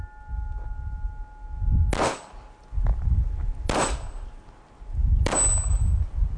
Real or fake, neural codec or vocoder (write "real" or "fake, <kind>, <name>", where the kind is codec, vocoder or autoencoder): real